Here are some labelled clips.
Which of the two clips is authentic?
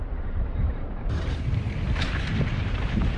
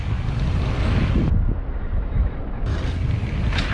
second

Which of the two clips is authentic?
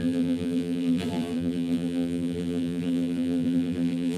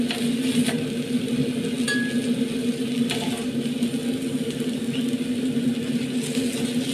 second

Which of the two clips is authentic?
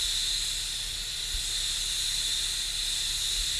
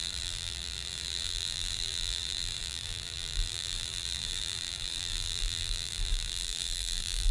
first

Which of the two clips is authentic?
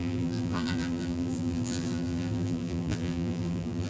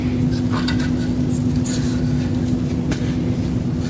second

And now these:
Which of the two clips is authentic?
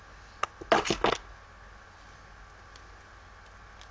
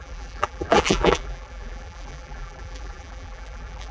first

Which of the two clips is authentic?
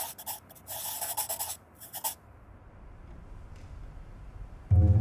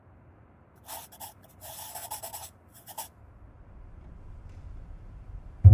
first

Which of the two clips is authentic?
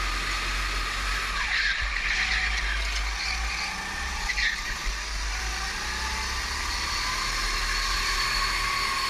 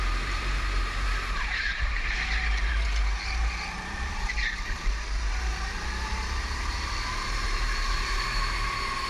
first